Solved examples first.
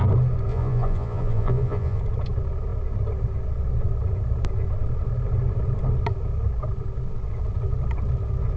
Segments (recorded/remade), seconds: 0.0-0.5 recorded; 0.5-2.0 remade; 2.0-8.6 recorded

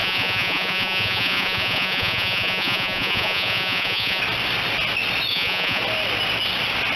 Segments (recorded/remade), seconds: 0.0-4.2 remade; 4.2-5.3 recorded; 5.3-5.8 remade; 5.8-7.0 recorded